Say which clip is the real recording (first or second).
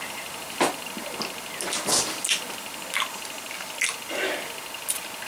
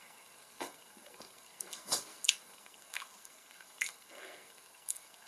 first